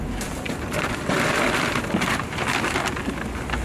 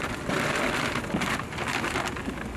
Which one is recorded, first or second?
second